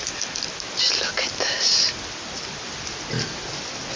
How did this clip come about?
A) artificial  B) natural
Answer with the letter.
B